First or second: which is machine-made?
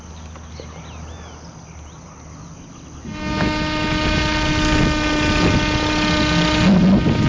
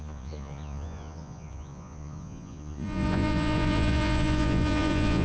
second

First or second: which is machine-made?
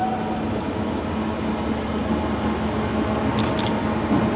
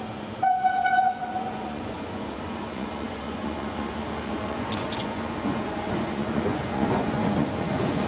second